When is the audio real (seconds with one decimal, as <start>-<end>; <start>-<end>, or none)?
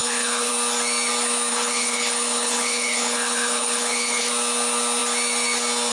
0.5-1.5; 4.3-5.9